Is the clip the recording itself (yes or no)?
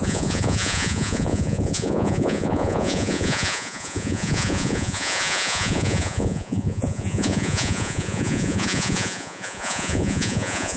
no